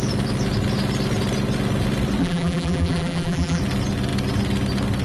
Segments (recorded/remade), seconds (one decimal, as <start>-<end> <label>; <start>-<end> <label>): 0.0-2.2 recorded; 2.2-3.6 remade; 3.6-5.0 recorded